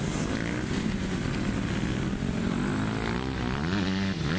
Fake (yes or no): no